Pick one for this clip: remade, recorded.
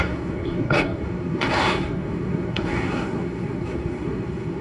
remade